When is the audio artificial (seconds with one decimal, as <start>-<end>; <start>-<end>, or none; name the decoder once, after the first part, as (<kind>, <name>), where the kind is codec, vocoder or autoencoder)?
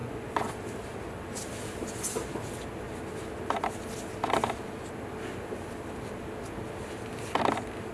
0.0-0.5 (vocoder, Vocos)